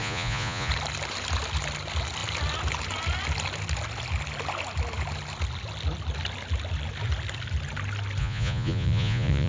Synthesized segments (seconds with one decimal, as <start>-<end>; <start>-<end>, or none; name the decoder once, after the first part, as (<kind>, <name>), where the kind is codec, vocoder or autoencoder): 0.0-0.7 (vocoder, Vocos); 8.2-9.5